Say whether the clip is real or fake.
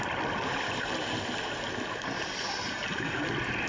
real